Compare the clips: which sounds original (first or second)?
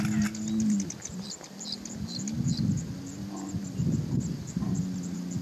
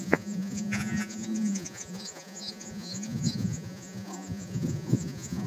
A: first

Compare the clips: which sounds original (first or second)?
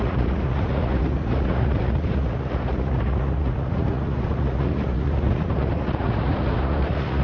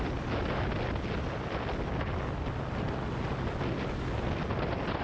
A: second